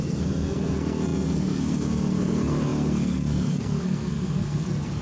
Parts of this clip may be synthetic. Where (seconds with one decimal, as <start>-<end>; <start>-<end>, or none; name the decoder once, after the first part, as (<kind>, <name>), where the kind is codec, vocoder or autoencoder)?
0.0-5.0 (codec, SNAC)